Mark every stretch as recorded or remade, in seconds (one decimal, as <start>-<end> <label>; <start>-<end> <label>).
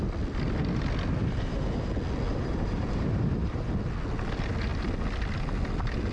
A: 0.0-1.2 recorded; 1.2-1.9 remade; 1.9-2.3 recorded; 2.3-3.7 remade; 3.7-6.1 recorded